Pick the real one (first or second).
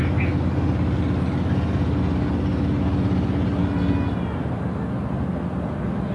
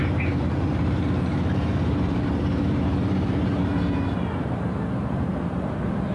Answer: first